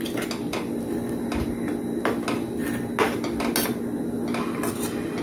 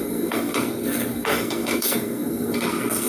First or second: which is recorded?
first